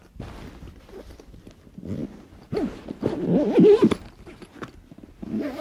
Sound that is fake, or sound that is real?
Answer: real